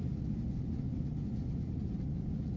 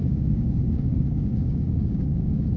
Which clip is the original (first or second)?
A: first